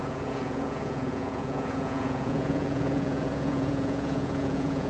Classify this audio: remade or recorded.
remade